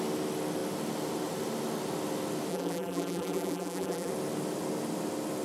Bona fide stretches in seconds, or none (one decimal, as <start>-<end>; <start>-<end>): 0.0-2.5; 4.1-5.4